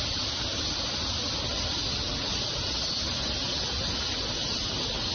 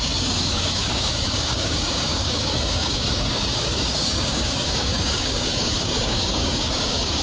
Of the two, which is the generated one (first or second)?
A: second